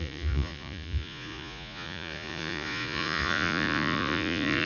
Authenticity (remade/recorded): remade